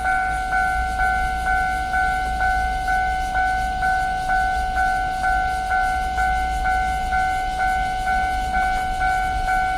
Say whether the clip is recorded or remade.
recorded